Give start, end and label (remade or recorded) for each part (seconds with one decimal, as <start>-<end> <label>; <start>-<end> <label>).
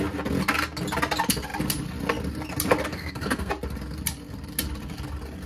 0.0-2.9 recorded; 2.9-3.5 remade; 3.5-5.5 recorded